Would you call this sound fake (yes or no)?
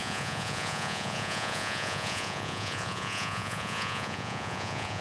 yes